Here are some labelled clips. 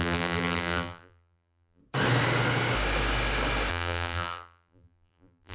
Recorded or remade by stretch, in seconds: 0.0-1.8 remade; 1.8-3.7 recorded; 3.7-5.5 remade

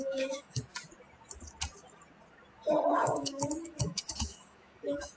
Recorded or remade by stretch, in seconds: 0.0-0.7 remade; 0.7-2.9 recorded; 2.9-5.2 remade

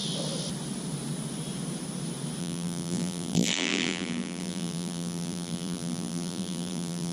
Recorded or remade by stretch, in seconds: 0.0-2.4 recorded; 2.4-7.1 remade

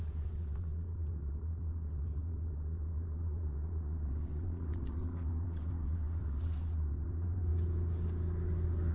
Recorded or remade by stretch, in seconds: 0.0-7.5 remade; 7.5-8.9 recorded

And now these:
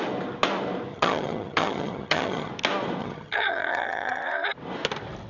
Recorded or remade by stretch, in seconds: 0.0-0.9 recorded; 0.9-2.5 remade; 2.5-3.0 recorded; 3.0-4.2 remade; 4.2-5.3 recorded